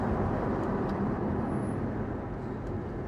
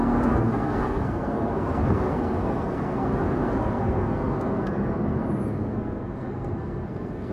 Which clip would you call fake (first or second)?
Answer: second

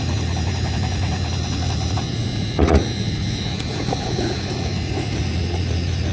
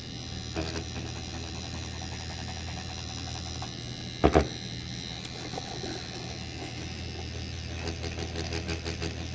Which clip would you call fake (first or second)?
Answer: first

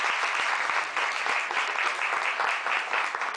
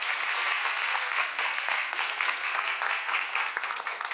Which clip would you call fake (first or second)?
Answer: second